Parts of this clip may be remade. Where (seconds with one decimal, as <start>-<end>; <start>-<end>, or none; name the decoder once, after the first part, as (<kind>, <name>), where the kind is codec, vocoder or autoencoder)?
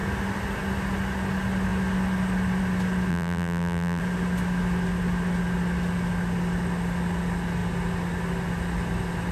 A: 3.1-4.0 (vocoder, BigVGAN v2)